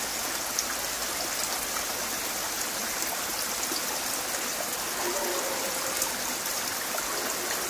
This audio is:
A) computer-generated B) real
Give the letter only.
B